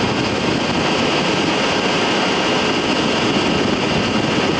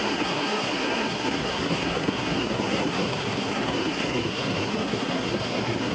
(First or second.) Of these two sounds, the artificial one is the second